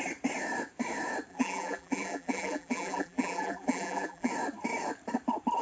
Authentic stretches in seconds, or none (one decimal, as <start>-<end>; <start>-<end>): 0.0-1.3; 4.3-5.6